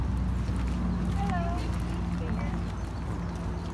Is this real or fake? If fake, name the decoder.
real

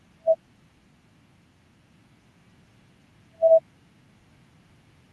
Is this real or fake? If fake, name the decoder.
real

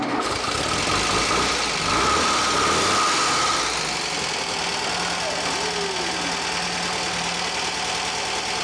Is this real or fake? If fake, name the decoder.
real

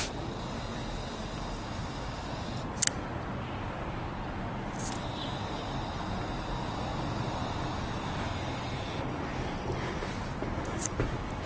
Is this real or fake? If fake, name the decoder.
real